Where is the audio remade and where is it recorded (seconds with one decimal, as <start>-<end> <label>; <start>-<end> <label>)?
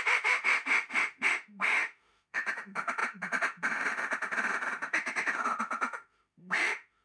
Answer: 0.0-7.0 remade